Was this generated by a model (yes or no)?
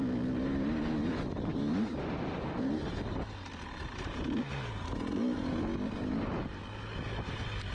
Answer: no